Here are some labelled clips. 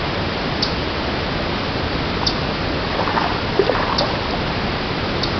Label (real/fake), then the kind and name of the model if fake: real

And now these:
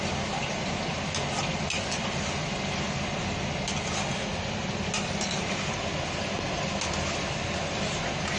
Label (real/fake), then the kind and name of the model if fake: real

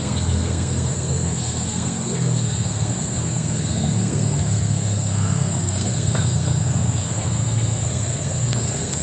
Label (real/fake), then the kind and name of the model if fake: fake, codec, SNAC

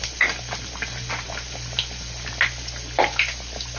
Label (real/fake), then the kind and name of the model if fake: real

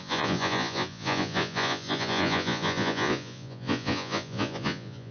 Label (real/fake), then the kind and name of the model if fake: fake, vocoder, Vocos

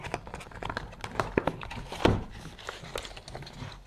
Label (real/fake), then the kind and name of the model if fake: real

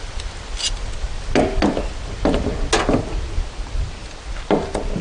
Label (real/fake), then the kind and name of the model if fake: real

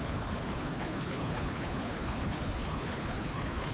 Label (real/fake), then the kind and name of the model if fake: fake, codec, HILCodec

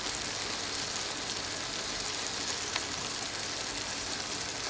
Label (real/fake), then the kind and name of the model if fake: real